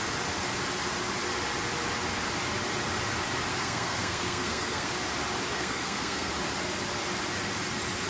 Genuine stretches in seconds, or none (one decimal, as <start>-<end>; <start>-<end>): 0.0-3.5; 4.9-5.5; 6.3-8.1